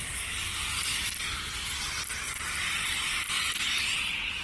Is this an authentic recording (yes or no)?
yes